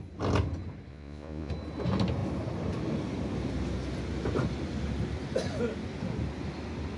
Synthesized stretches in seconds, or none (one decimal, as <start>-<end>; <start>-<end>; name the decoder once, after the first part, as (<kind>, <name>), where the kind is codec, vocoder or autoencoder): 0.9-1.5 (vocoder, Vocos)